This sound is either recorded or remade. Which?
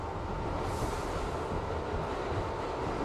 recorded